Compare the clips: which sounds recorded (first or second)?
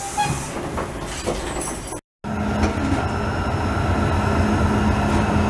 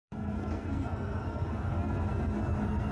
first